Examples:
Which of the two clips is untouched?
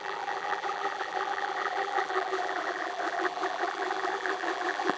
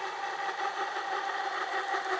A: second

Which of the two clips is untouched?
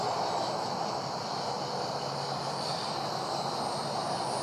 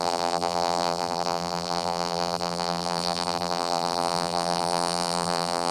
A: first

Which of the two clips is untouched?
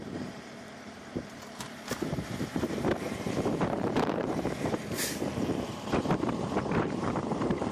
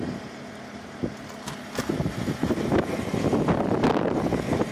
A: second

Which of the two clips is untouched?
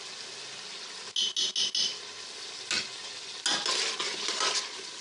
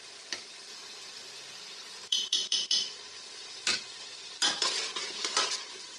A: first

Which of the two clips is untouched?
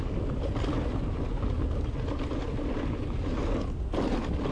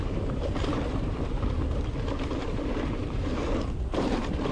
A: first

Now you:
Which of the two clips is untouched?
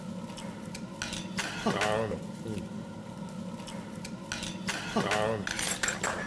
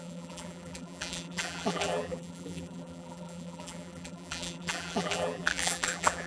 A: first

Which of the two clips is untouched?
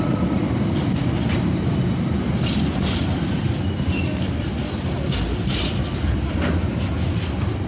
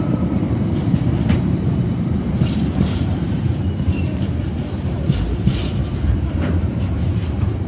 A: first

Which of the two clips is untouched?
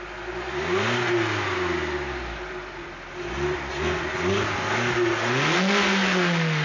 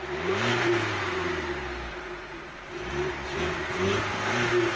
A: first